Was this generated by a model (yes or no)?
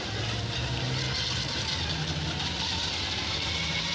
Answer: no